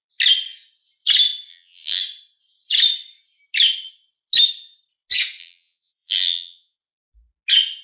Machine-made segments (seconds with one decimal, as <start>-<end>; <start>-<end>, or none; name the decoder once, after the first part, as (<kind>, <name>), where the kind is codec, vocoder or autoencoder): 1.5-2.0 (vocoder, BigVGAN v2); 5.4-6.8